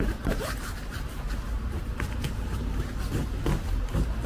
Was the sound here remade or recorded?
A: remade